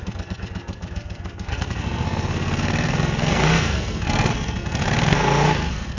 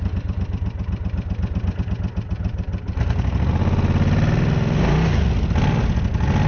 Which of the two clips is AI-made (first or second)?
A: first